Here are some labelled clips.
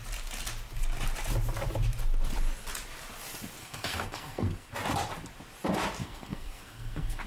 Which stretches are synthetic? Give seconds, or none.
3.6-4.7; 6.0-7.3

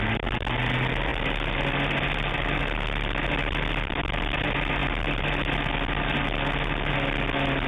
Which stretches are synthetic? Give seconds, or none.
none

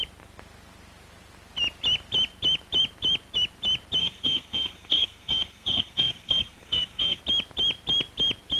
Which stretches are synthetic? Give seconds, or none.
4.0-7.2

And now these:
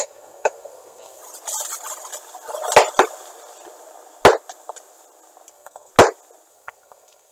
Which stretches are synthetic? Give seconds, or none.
0.0-1.2; 5.5-5.9; 6.5-7.3